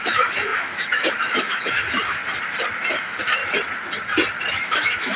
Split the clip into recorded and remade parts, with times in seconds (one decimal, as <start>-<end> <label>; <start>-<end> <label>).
0.0-2.2 remade; 2.2-3.0 recorded; 3.0-3.4 remade; 3.4-4.5 recorded; 4.5-5.2 remade